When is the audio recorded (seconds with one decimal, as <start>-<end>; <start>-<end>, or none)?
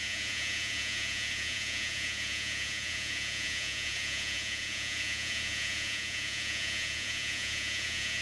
none